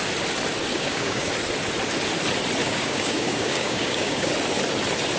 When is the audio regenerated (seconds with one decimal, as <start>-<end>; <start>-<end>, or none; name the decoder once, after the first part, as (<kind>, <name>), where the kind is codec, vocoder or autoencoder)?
0.7-1.3 (codec, DAC); 2.6-4.3